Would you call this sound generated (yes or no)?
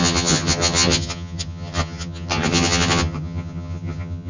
yes